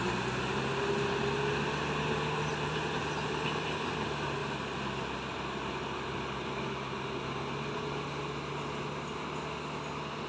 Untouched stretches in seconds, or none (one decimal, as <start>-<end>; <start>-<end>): 0.0-2.5; 3.0-10.3